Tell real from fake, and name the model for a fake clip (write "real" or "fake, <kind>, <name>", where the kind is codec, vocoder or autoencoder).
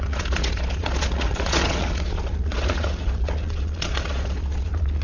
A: fake, vocoder, Vocos